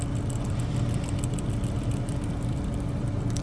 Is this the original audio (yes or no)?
yes